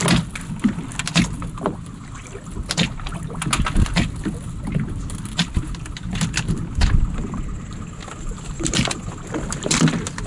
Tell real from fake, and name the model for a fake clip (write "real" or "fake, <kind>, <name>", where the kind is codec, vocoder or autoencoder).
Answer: real